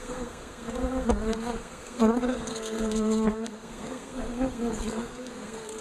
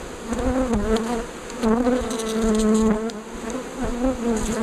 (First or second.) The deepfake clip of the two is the first